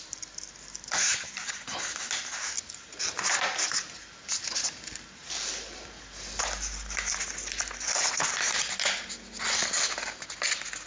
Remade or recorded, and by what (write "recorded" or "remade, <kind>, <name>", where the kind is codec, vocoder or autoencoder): recorded